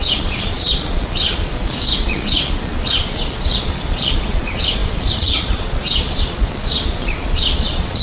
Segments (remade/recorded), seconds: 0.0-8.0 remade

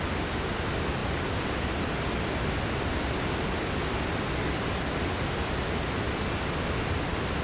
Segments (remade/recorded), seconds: 0.0-7.4 recorded

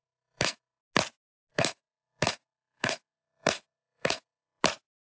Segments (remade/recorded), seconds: 0.0-0.8 remade; 0.8-1.5 recorded; 1.5-4.6 remade; 4.6-5.1 recorded

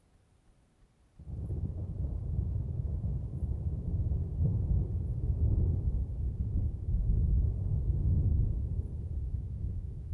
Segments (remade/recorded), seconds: 0.0-9.3 recorded; 9.3-10.1 remade